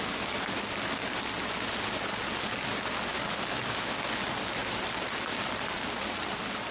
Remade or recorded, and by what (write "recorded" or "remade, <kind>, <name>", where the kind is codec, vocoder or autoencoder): recorded